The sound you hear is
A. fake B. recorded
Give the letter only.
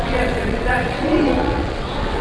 A